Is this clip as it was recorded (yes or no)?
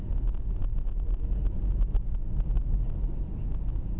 yes